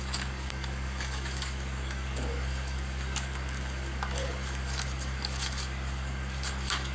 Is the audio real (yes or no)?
no